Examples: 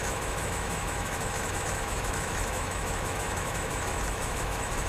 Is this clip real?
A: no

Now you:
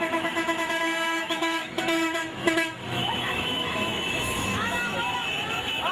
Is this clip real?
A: no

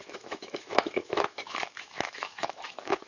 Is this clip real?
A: no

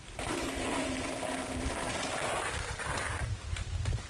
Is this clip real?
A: yes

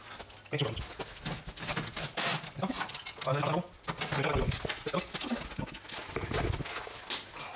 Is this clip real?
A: yes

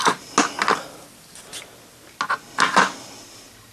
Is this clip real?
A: yes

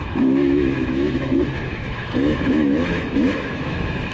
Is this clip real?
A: no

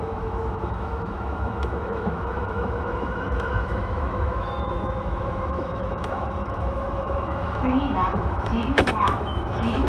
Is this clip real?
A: no